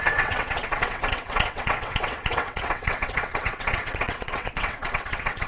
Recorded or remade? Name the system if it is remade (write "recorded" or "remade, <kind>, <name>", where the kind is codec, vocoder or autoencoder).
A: remade, vocoder, WaveNeXt